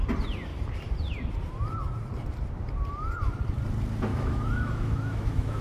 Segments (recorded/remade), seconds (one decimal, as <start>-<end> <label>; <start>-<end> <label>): 0.0-4.1 recorded; 4.1-5.6 remade